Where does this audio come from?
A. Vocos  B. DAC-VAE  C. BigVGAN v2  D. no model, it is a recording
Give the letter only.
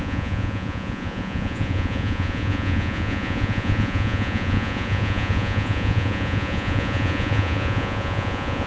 A